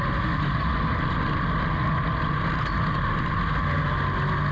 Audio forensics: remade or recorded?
recorded